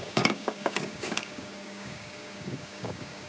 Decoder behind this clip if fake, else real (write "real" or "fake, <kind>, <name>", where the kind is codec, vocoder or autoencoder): fake, codec, DAC